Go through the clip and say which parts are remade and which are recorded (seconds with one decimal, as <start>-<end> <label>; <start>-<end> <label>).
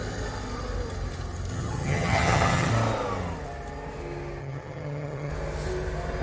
0.0-1.5 recorded; 1.5-2.7 remade; 2.7-4.4 recorded; 4.4-5.3 remade; 5.3-6.2 recorded